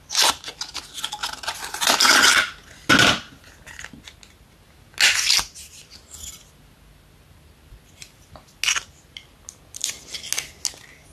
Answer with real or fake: real